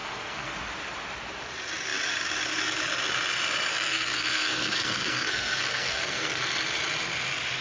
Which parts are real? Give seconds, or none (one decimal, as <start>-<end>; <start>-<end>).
0.5-3.7; 6.5-7.6